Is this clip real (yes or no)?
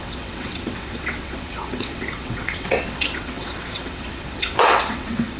no